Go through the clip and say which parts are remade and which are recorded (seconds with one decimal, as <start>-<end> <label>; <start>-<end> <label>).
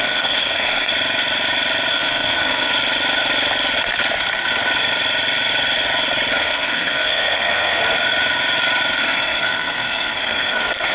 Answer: 0.0-0.9 remade; 0.9-1.9 recorded; 1.9-2.7 remade; 2.7-6.4 recorded; 6.4-7.8 remade; 7.8-9.0 recorded; 9.0-10.9 remade